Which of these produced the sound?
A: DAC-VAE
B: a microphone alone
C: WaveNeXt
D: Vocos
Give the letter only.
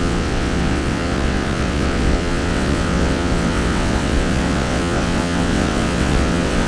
C